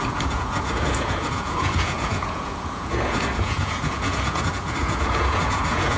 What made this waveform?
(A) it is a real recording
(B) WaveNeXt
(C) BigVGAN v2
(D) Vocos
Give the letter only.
D